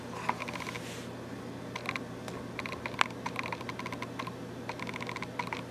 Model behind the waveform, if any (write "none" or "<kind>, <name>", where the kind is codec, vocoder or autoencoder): none